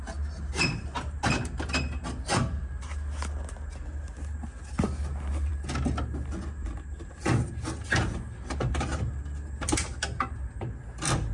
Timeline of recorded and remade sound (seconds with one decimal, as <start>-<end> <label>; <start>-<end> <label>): 0.0-11.3 recorded